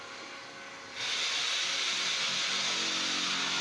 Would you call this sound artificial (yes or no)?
no